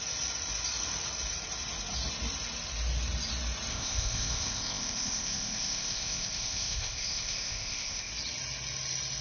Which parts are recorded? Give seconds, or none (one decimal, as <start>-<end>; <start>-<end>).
0.0-3.7; 8.1-9.2